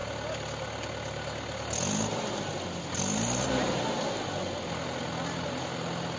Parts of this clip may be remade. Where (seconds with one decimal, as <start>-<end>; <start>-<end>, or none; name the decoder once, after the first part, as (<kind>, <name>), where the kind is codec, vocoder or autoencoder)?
none